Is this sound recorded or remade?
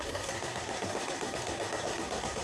remade